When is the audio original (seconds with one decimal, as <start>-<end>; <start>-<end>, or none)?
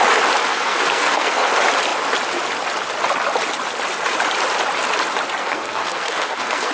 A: 0.0-0.5; 1.5-5.4